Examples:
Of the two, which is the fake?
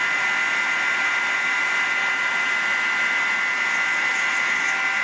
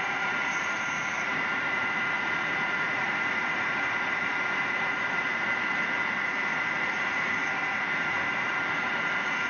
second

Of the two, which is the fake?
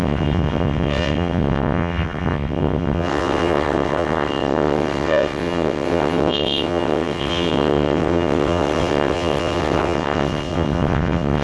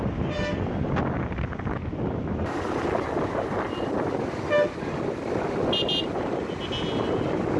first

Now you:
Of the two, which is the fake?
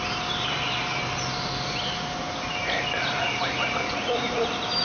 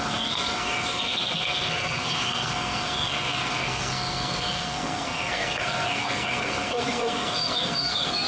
second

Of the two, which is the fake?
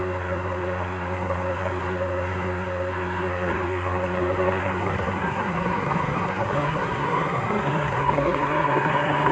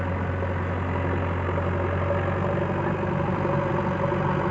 first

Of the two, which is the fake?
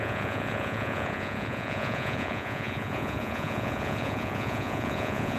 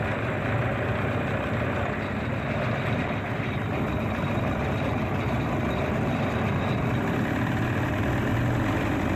first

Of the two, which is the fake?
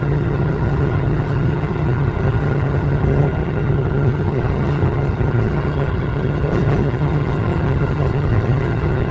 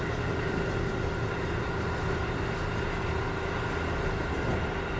first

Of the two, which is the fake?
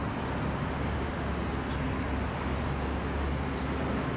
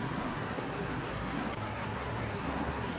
second